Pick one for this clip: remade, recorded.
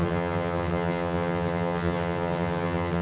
remade